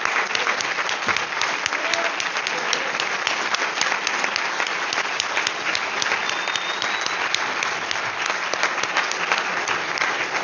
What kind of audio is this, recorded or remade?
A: recorded